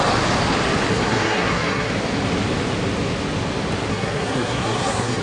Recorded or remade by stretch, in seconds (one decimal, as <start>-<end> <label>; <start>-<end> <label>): 0.0-0.9 recorded; 0.9-1.9 remade; 1.9-3.9 recorded; 3.9-5.2 remade